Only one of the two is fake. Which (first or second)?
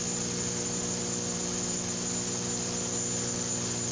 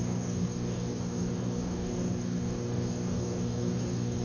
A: second